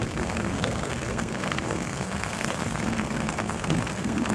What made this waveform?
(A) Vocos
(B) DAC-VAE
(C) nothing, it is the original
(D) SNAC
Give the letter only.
D